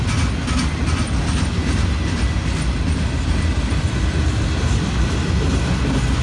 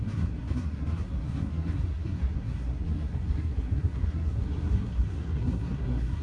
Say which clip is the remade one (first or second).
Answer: second